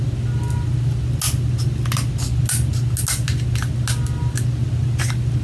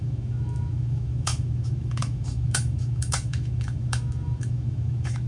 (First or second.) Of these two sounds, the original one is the first